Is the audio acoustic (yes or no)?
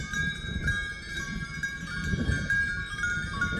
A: yes